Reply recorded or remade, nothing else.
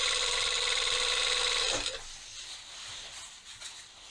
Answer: recorded